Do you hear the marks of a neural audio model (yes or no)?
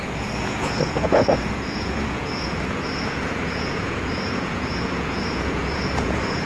yes